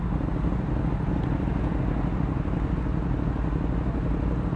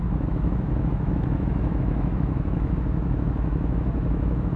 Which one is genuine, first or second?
first